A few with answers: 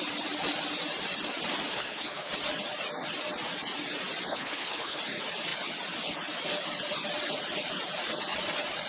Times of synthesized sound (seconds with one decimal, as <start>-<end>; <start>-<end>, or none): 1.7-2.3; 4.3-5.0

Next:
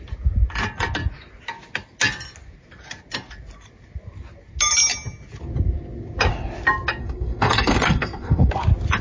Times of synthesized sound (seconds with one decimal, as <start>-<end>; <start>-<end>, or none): 7.0-8.5

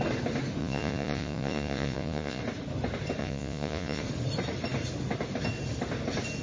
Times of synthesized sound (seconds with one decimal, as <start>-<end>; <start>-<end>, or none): 0.6-2.4; 3.2-4.0

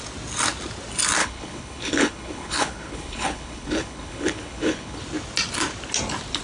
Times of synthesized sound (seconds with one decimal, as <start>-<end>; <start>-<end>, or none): 1.2-5.0

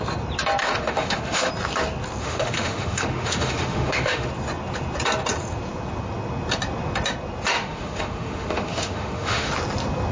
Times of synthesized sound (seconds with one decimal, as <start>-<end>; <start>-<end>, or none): 0.6-1.5; 2.2-4.3; 7.5-9.5

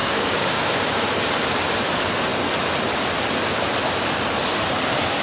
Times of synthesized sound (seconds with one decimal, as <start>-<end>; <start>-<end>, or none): 0.0-0.7

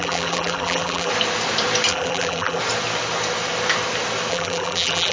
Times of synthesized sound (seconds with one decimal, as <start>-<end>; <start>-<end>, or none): 0.0-1.1; 1.9-2.6; 4.3-5.1